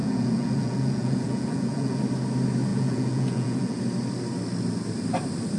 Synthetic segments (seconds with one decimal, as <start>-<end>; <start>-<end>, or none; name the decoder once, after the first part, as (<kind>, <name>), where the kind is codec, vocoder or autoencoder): 0.0-2.0 (vocoder, Vocos); 2.7-3.8